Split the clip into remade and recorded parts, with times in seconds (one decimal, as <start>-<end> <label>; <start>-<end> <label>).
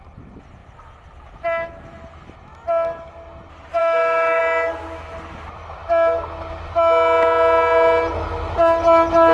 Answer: 0.0-3.8 recorded; 3.8-4.4 remade; 4.4-9.3 recorded